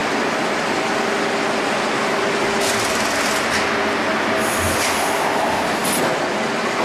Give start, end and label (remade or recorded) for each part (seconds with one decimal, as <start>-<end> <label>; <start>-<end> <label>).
0.0-6.8 recorded